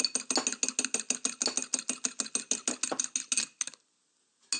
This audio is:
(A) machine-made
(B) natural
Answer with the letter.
B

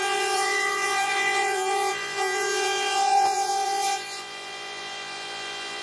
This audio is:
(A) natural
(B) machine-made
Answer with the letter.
B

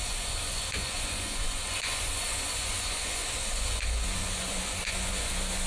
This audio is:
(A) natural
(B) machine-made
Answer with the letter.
B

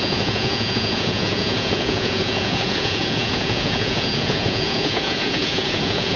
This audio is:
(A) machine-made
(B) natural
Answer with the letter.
A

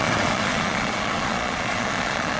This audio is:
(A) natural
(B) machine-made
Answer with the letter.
B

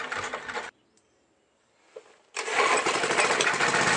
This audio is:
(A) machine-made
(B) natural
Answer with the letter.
B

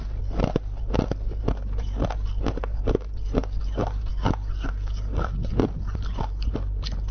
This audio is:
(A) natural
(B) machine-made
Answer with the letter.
A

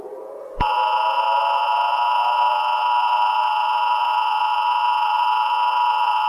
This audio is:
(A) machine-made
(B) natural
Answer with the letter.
A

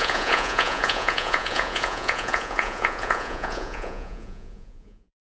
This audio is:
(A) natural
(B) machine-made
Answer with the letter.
B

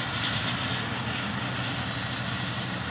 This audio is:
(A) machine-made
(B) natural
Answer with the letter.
B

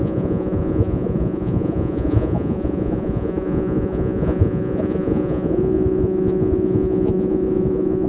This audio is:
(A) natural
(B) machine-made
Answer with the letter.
B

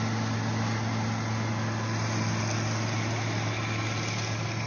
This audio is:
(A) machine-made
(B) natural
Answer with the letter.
B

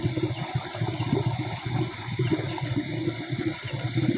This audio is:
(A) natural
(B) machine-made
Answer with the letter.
A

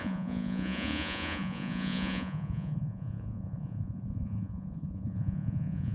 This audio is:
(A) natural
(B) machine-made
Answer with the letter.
B